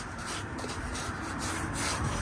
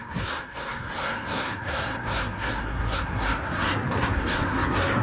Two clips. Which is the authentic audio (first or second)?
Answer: first